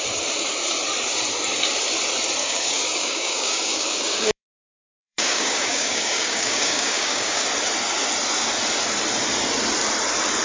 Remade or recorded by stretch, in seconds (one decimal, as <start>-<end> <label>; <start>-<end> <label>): 0.0-2.4 recorded; 2.4-7.4 remade; 7.4-10.4 recorded

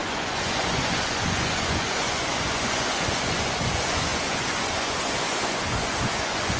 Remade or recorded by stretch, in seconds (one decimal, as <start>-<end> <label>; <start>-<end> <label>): 0.0-6.6 remade

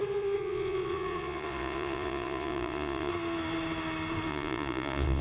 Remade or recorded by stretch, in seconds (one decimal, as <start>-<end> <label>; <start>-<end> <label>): 0.0-3.1 remade; 3.1-4.3 recorded; 4.3-5.2 remade

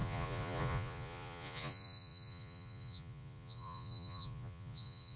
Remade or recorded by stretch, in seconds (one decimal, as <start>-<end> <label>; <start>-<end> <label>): 0.0-5.2 remade